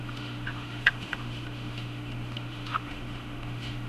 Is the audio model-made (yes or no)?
yes